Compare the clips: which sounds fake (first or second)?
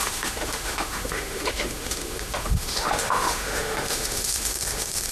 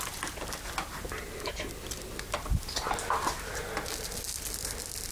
first